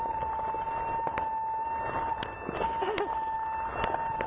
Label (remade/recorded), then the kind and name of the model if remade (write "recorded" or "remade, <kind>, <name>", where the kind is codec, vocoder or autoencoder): recorded